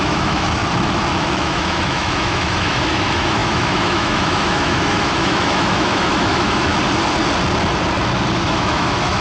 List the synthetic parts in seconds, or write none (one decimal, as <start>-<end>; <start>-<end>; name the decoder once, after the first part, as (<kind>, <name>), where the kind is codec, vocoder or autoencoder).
0.0-0.6 (autoencoder, DAC-VAE); 1.1-6.7; 8.4-9.2

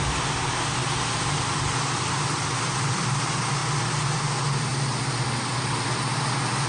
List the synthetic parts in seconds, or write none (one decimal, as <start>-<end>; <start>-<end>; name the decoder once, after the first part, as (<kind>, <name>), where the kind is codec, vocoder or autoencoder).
0.8-3.1 (vocoder, BigVGAN v2); 4.7-6.2

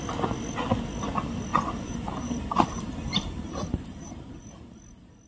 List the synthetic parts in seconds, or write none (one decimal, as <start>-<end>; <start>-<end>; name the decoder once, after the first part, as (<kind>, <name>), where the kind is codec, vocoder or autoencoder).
1.5-4.7 (vocoder, BigVGAN v2)